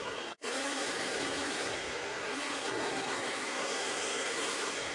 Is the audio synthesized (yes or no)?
yes